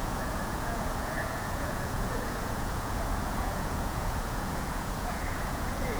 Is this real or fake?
fake